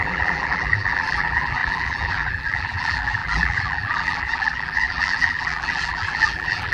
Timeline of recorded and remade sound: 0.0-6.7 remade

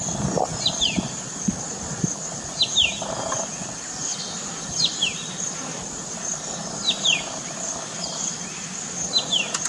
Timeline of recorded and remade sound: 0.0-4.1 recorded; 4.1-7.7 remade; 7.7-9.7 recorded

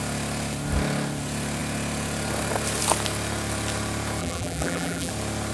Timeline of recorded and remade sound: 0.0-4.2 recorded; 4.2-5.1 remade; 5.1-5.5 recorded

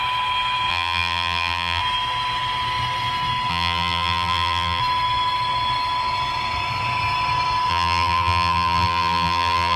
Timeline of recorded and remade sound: 0.0-0.7 recorded; 0.7-1.8 remade; 1.8-3.5 recorded; 3.5-4.8 remade; 4.8-7.7 recorded; 7.7-9.8 remade